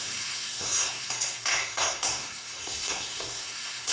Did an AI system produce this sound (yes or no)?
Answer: yes